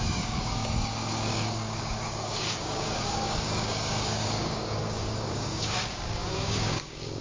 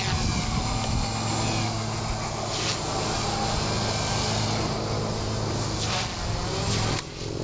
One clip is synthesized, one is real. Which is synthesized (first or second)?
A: first